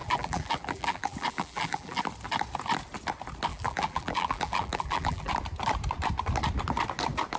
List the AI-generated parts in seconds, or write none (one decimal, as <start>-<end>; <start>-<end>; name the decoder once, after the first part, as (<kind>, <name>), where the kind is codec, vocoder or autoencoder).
0.0-2.0 (vocoder, BigVGAN v2); 3.5-5.3